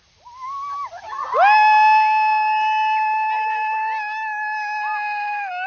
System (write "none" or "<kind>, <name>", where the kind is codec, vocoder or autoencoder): none